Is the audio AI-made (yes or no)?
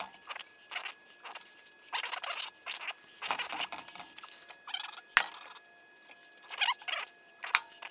no